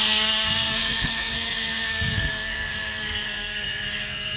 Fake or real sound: fake